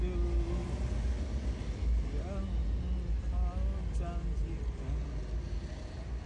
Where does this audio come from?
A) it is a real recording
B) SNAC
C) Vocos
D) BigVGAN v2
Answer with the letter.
A